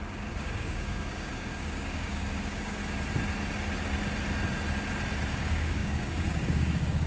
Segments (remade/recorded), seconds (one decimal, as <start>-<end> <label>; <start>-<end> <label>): 0.0-2.8 remade; 2.8-5.3 recorded; 5.3-7.1 remade